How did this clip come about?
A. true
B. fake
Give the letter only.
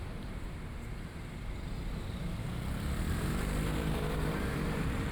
B